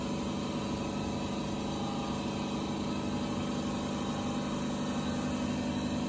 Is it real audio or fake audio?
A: real